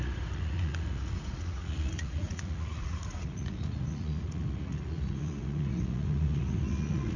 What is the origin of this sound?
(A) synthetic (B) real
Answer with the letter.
A